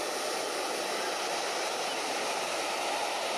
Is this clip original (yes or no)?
yes